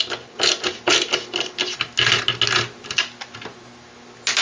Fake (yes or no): no